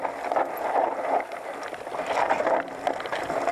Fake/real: real